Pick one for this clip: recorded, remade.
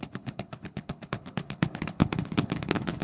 remade